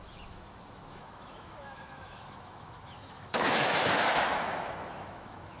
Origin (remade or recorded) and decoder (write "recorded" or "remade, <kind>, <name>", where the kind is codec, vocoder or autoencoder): remade, autoencoder, DAC-VAE